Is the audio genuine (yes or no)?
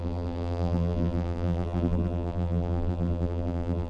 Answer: no